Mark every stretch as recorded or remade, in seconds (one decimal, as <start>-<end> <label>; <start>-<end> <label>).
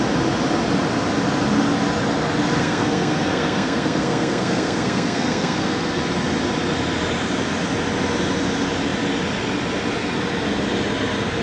0.0-2.6 recorded; 2.6-6.0 remade; 6.0-11.4 recorded